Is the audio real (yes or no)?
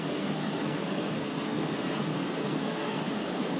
no